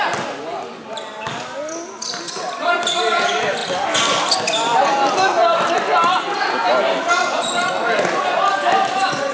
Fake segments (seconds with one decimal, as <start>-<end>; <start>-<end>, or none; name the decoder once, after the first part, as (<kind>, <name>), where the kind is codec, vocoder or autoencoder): none